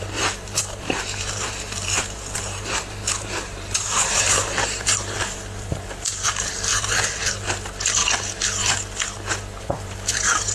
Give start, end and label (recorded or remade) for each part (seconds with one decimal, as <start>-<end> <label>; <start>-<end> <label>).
0.0-8.0 remade; 8.0-9.6 recorded; 9.6-10.5 remade